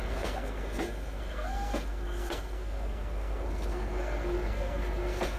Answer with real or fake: fake